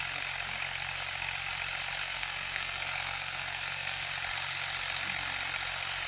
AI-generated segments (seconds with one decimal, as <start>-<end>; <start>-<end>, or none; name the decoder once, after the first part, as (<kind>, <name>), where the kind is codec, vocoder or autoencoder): 2.0-4.0 (codec, SNAC)